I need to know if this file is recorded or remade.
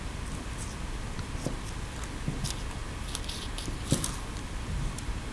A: recorded